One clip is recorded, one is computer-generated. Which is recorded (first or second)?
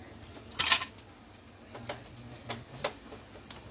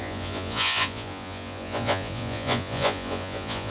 first